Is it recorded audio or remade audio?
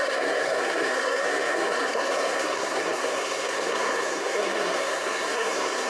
remade